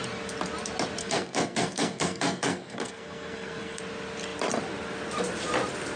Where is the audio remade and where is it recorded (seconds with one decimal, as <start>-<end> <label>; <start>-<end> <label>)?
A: 0.0-1.0 recorded; 1.0-3.8 remade; 3.8-6.0 recorded